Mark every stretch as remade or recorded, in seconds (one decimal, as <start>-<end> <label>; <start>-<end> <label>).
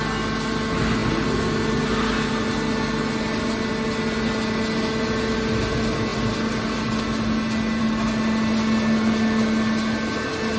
0.0-10.6 recorded